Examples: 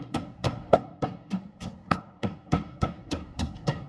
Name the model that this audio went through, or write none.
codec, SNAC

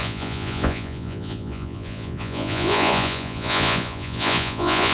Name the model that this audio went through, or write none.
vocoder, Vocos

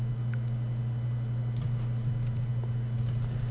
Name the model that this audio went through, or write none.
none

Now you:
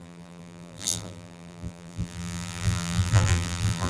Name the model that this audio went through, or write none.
vocoder, BigVGAN v2